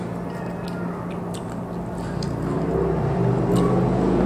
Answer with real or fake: real